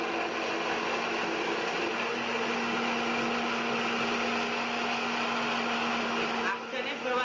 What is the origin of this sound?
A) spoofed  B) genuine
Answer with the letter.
B